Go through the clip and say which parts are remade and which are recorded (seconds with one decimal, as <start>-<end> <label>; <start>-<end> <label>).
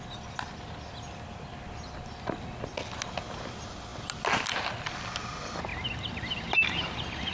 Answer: 0.0-5.7 recorded; 5.7-7.3 remade